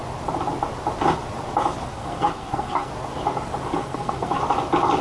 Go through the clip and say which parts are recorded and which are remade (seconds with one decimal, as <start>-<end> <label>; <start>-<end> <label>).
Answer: 0.0-1.9 recorded; 1.9-2.9 remade; 2.9-3.8 recorded; 3.8-4.4 remade; 4.4-5.0 recorded